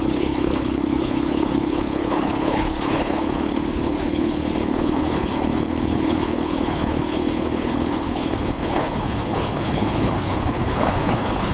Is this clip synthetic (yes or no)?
yes